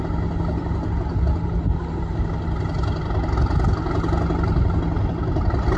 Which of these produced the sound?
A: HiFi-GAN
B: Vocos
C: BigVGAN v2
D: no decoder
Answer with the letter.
D